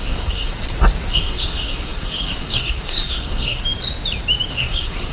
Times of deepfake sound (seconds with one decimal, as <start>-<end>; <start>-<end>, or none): 0.0-0.5; 1.1-3.6; 4.5-5.1